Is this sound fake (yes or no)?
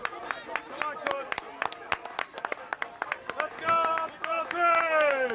no